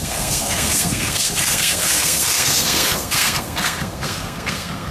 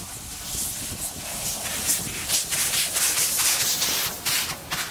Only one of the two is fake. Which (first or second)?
first